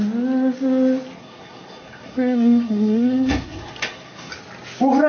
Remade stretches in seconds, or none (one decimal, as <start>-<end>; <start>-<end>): 1.2-4.3